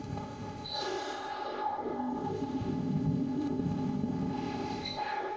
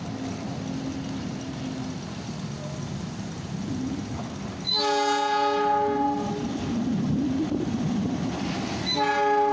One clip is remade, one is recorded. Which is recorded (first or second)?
second